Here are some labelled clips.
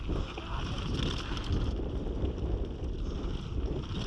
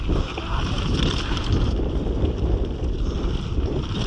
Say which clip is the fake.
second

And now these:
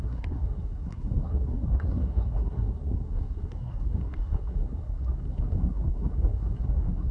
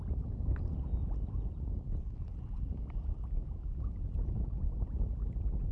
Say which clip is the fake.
first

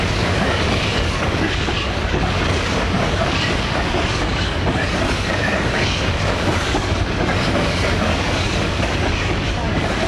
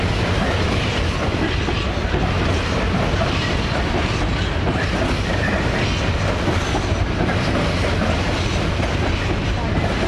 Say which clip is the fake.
first